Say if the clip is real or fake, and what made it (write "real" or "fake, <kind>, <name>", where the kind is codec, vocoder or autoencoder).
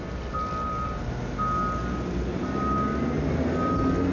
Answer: real